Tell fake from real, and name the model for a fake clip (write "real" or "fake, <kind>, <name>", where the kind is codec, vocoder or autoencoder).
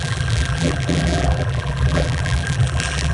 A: fake, vocoder, BigVGAN v2